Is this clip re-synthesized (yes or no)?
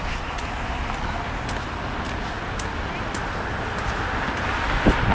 no